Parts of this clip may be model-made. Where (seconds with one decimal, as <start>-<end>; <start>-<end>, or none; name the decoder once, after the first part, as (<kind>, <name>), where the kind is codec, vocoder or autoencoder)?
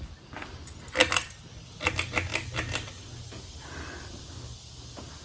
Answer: 1.0-1.9 (vocoder, BigVGAN v2); 2.3-3.0